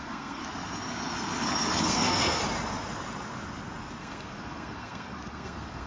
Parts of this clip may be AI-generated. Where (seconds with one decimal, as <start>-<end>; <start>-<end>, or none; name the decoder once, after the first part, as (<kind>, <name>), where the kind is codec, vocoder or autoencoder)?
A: 0.0-0.4 (codec, SNAC); 1.8-2.4; 4.0-5.9